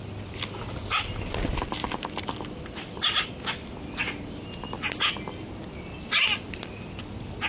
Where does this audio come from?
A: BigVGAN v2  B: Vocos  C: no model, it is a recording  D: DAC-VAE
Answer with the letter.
C